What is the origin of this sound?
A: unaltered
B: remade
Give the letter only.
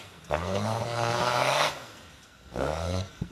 B